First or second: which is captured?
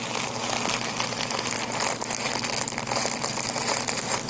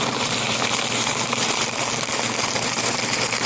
first